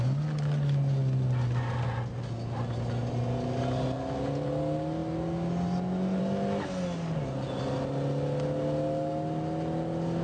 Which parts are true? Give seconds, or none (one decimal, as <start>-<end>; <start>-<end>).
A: 0.0-10.2